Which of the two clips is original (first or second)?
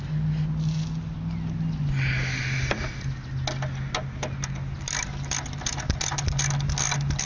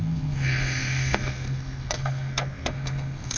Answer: first